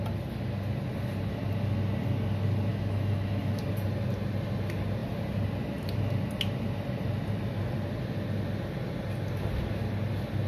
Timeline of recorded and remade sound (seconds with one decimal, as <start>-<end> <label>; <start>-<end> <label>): 0.0-2.7 recorded; 2.7-3.6 remade; 3.6-10.5 recorded